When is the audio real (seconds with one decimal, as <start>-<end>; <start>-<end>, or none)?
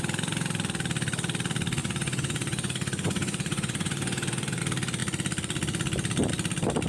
0.0-1.8; 4.6-6.9